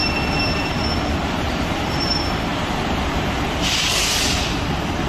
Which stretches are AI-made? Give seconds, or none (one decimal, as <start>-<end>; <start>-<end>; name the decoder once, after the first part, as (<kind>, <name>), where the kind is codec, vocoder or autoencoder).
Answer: 1.2-2.1 (vocoder, BigVGAN v2); 2.5-4.0